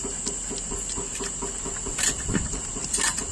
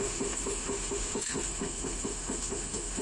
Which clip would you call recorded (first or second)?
first